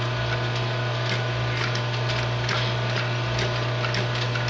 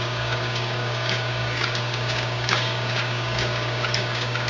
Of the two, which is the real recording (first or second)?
first